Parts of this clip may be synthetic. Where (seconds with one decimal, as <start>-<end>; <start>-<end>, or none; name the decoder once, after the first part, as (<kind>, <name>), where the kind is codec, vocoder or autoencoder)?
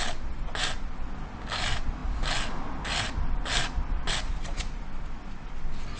none